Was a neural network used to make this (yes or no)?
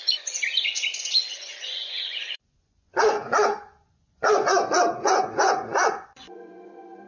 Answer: yes